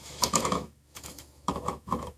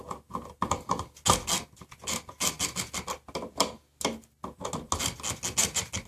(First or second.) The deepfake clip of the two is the first